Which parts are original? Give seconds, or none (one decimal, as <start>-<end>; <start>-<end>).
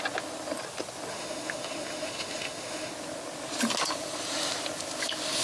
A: 0.0-1.1; 2.9-5.4